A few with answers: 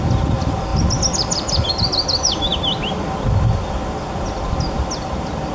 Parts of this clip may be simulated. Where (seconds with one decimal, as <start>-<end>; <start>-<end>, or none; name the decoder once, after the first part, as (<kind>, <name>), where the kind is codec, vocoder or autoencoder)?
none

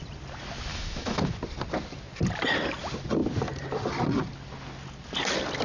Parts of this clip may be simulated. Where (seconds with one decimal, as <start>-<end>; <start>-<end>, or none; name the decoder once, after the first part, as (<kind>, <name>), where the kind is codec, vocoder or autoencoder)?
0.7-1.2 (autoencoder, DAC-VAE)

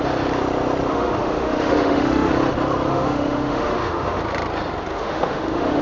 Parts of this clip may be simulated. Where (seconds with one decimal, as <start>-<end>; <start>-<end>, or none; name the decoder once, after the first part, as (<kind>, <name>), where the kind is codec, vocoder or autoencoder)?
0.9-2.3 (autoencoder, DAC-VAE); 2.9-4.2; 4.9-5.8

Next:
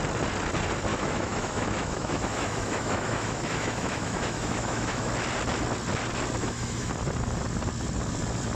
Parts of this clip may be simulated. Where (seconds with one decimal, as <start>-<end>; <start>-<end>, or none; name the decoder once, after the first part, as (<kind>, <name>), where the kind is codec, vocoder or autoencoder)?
0.9-5.1 (autoencoder, DAC-VAE); 6.4-6.9